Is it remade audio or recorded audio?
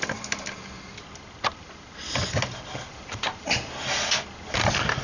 recorded